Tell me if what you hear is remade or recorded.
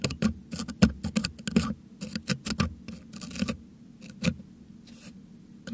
recorded